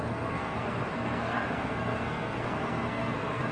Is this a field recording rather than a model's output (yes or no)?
no